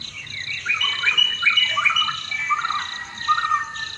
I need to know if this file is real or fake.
real